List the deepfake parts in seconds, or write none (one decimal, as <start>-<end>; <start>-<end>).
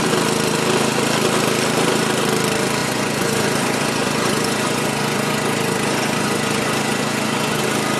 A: 2.8-7.6